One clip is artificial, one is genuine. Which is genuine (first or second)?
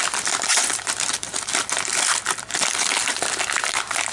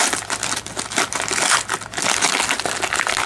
second